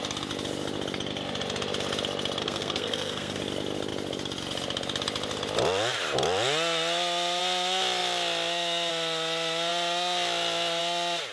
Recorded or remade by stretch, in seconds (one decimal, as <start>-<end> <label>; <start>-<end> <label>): 0.0-2.4 recorded; 2.4-3.4 remade; 3.4-11.3 recorded

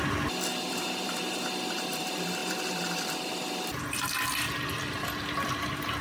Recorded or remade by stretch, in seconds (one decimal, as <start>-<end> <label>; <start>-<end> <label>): 0.0-0.5 recorded; 0.5-1.3 remade; 1.3-6.0 recorded

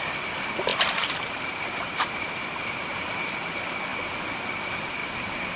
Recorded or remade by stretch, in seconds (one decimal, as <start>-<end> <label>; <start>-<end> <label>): 0.0-0.7 recorded; 0.7-3.4 remade; 3.4-5.0 recorded; 5.0-5.6 remade